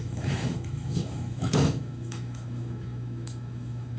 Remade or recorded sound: remade